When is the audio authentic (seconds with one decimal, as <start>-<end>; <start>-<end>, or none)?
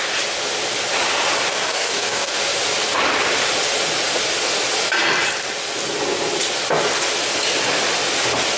0.0-1.5; 2.4-8.6